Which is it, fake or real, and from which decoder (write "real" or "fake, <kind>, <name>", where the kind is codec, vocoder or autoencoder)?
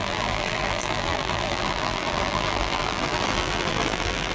fake, vocoder, BigVGAN v2